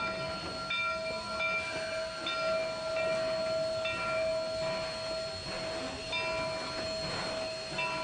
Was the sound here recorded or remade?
recorded